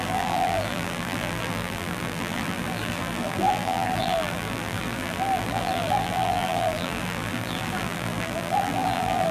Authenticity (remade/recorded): remade